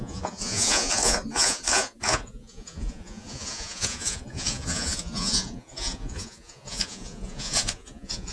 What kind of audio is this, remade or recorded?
remade